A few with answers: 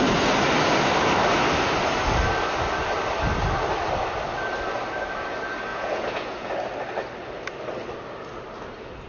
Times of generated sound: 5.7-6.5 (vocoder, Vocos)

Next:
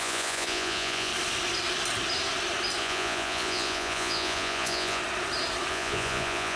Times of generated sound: 0.0-1.1 (vocoder, Vocos); 2.8-5.0; 5.7-6.6